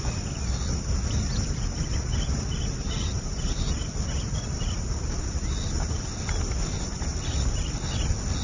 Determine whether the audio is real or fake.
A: real